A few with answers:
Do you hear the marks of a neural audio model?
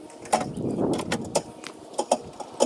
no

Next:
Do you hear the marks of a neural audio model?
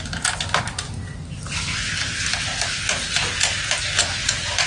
no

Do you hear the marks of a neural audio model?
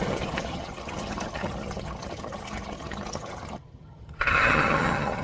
yes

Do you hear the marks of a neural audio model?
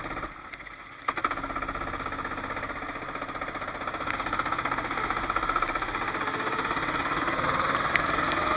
no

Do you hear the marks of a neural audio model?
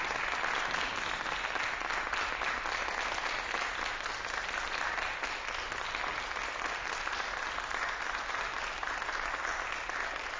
no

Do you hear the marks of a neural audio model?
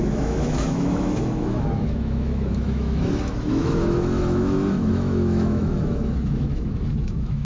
yes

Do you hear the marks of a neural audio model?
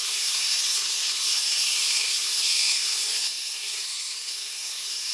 yes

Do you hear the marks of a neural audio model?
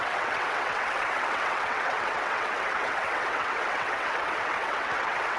yes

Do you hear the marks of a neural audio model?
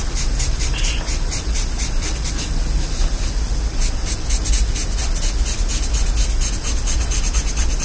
no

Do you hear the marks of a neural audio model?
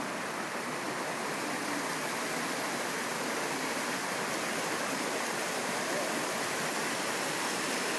no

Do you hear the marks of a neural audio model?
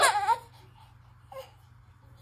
no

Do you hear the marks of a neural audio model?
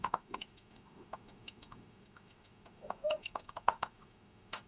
yes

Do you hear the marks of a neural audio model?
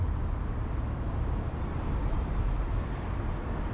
no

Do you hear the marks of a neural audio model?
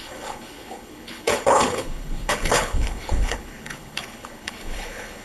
yes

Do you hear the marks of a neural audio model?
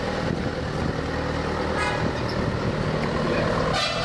no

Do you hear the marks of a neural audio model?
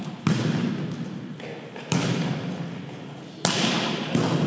no